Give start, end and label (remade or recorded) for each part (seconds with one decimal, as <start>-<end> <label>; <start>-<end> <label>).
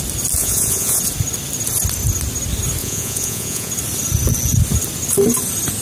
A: 0.0-0.4 recorded; 0.4-1.0 remade; 1.0-2.8 recorded; 2.8-3.7 remade; 3.7-5.8 recorded